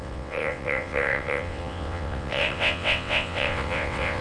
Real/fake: fake